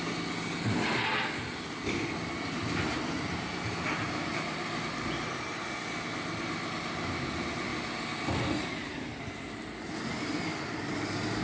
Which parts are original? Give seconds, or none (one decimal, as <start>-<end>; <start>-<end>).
0.0-11.4